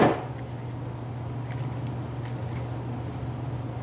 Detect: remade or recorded recorded